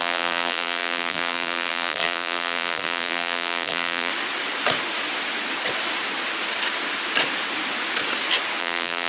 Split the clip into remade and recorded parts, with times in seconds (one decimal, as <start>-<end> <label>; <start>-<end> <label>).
0.0-4.1 remade; 4.1-8.6 recorded; 8.6-9.1 remade